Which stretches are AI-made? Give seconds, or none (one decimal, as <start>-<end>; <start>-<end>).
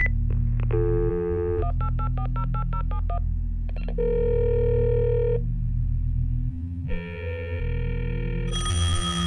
1.1-1.6; 6.5-7.6; 8.7-9.3